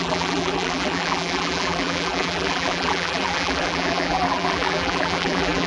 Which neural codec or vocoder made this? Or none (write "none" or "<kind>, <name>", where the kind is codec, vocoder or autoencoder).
vocoder, BigVGAN v2